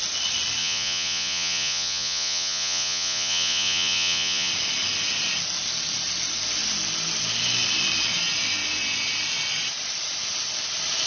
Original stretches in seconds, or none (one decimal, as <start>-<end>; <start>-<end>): 0.0-0.6; 4.5-11.1